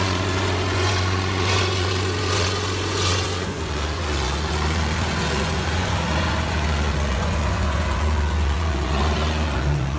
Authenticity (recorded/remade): remade